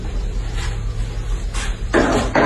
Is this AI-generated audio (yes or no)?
no